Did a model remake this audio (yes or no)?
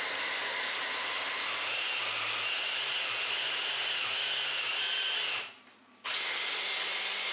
no